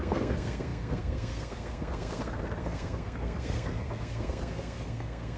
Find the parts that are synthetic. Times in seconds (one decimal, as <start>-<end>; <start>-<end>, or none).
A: 0.0-5.4